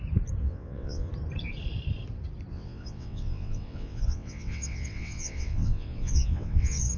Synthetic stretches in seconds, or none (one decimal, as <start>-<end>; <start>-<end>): 0.4-1.1; 2.5-7.0